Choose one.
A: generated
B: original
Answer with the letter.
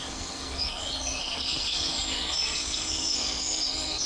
A